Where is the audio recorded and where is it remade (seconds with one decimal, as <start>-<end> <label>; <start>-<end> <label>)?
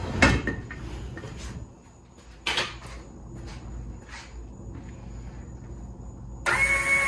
0.0-7.1 recorded